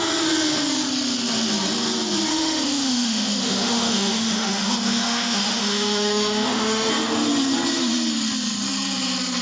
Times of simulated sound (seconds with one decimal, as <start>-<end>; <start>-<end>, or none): 2.3-6.9